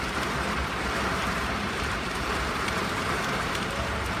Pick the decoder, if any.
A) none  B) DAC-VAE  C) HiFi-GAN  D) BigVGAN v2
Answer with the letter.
D